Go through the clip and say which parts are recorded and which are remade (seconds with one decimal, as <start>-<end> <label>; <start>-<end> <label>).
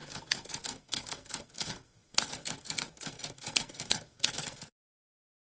0.0-5.5 remade